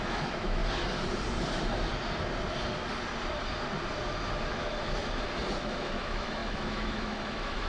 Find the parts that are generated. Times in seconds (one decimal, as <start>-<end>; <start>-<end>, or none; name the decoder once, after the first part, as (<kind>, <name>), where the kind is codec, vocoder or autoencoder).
0.0-0.6 (autoencoder, DAC-VAE); 4.5-5.0; 5.6-7.7

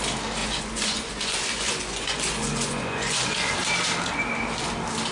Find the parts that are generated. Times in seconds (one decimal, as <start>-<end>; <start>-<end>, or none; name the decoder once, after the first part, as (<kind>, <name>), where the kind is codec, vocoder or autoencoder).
0.4-3.5 (vocoder, Vocos)

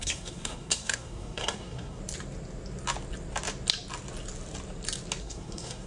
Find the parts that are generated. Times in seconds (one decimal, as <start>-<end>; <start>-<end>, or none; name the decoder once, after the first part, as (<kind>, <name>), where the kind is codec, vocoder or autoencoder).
0.0-2.0 (codec, SNAC); 5.2-5.9

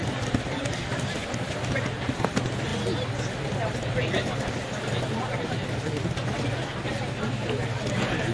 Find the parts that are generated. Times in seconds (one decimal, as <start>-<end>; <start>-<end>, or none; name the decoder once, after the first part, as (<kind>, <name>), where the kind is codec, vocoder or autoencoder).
none